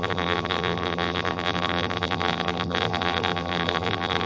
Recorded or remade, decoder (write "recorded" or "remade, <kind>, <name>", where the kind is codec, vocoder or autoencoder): remade, vocoder, BigVGAN v2